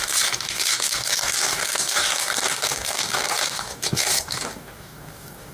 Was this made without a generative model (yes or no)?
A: no